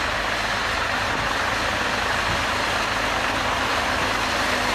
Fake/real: real